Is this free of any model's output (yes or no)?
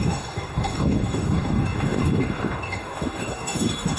no